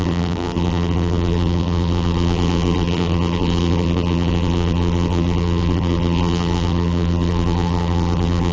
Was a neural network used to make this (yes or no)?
yes